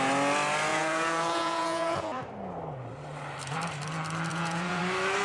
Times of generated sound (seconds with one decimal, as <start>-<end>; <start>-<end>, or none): 0.7-2.2; 4.3-4.8